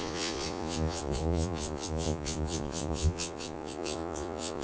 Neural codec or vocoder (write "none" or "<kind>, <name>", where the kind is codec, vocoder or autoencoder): vocoder, Vocos